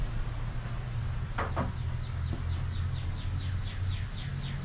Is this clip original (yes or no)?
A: yes